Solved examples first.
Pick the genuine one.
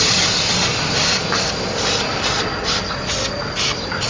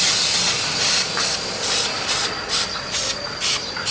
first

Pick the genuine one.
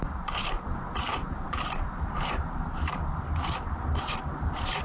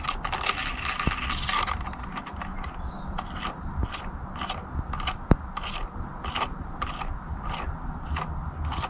second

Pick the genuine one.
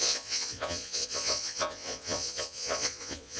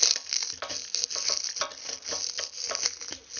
second